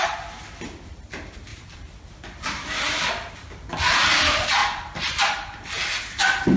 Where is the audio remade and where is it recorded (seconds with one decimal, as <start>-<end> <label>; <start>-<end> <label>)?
0.0-1.5 recorded; 1.5-3.3 remade; 3.3-4.6 recorded; 4.6-5.2 remade; 5.2-6.6 recorded